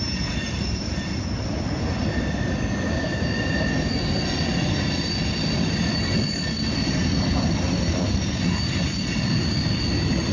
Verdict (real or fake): real